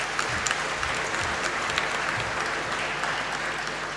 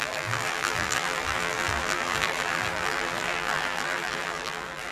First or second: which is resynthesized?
second